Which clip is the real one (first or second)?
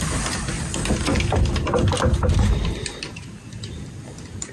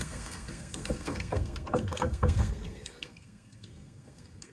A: first